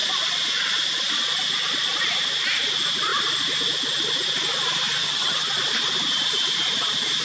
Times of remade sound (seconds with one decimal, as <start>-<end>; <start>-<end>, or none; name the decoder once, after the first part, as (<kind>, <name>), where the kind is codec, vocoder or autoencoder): 5.0-5.5 (vocoder, HiFi-GAN)

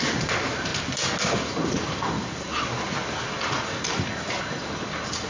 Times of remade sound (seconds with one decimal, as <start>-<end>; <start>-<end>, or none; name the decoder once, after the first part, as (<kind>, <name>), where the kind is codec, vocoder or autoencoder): none

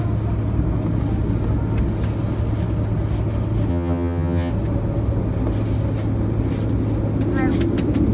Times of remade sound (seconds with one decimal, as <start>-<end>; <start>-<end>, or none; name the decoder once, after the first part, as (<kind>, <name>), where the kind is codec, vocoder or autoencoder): 3.7-4.5 (vocoder, HiFi-GAN)

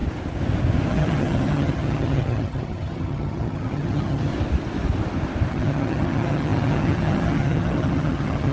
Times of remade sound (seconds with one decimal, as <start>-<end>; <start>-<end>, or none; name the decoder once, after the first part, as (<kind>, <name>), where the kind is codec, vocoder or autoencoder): 0.9-4.3 (vocoder, HiFi-GAN); 5.5-8.5

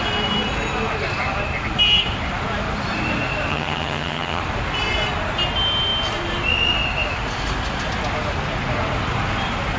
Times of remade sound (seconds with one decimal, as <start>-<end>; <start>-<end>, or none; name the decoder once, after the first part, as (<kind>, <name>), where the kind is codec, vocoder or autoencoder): 3.5-4.4 (vocoder, HiFi-GAN)

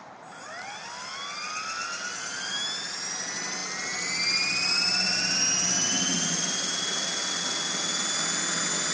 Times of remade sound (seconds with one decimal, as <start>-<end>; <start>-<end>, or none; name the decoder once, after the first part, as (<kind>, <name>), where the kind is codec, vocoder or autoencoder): none